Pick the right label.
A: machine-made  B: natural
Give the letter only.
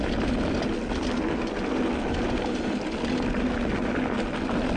B